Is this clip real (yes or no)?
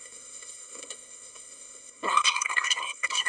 no